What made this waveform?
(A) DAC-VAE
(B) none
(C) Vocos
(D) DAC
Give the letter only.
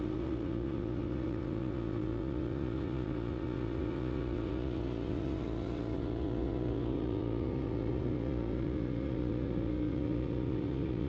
C